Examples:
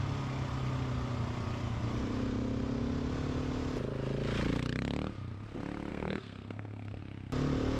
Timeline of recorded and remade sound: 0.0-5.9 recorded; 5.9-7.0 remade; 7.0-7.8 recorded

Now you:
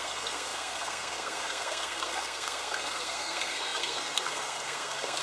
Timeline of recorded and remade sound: 0.0-5.2 remade

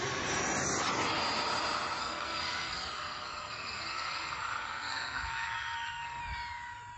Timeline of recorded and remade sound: 0.0-2.0 recorded; 2.0-6.2 remade; 6.2-7.0 recorded

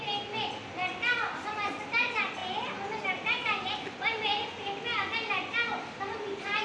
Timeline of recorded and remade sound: 0.0-6.6 recorded

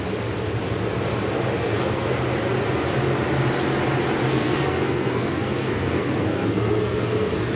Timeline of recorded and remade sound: 0.0-1.6 recorded; 1.6-2.2 remade; 2.2-4.3 recorded; 4.3-7.6 remade